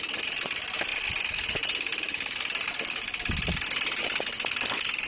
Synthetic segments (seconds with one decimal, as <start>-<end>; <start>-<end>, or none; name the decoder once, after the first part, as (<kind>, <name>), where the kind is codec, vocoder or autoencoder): none